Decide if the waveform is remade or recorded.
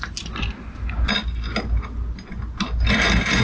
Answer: recorded